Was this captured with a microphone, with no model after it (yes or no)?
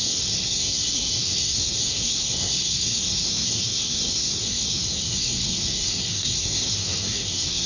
no